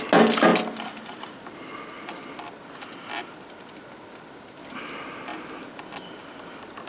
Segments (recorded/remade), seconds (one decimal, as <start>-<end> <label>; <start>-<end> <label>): 0.0-6.9 recorded